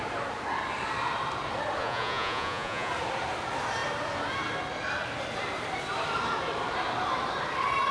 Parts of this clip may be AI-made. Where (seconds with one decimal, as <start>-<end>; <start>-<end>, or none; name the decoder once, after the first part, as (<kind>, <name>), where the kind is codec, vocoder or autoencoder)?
1.8-2.9 (vocoder, Vocos)

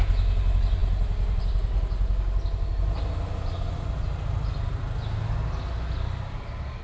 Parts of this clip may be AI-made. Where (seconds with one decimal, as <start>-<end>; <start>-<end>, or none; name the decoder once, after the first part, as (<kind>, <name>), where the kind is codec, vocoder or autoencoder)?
none

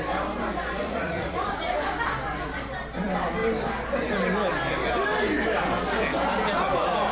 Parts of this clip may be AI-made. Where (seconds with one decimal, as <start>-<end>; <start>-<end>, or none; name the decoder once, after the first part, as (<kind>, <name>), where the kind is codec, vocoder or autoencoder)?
0.8-1.8 (vocoder, Vocos)

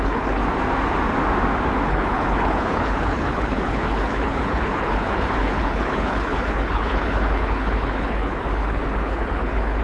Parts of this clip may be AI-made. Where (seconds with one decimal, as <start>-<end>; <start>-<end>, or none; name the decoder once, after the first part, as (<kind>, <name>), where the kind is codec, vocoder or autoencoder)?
0.0-0.4 (codec, HILCodec); 1.9-9.8

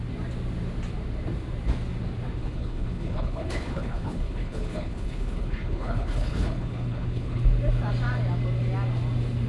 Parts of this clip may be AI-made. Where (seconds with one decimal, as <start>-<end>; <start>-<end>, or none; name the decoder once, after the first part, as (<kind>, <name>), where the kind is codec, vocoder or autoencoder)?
2.4-7.4 (codec, HILCodec)